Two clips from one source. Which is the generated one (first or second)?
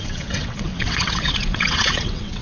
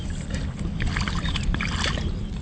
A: first